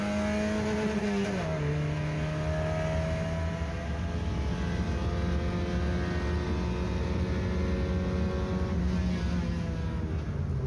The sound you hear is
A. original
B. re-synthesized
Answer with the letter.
A